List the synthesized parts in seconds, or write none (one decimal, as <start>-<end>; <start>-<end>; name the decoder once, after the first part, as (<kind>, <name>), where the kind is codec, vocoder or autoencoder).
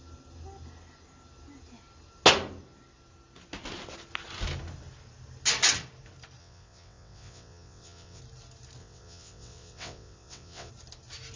6.4-8.2 (vocoder, WaveNeXt); 8.8-10.7